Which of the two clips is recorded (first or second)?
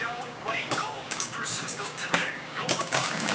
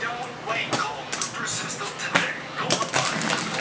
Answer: second